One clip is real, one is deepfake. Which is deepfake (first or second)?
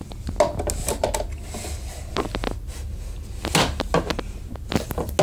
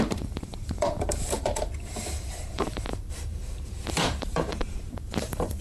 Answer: second